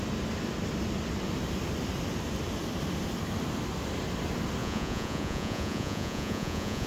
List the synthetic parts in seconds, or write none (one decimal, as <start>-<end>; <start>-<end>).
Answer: 4.6-6.9